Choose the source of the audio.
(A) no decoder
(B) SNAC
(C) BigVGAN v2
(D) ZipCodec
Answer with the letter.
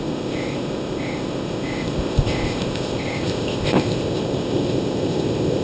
D